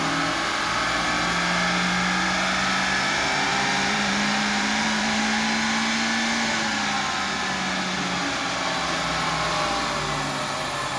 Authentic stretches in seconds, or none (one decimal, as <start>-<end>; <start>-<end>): 0.0-3.5; 5.2-11.0